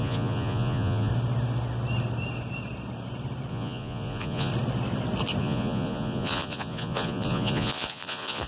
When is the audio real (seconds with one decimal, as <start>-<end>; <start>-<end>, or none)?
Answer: 1.1-3.5; 4.5-5.4